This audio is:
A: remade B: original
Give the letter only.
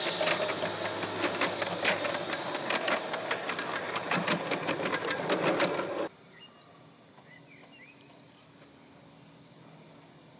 B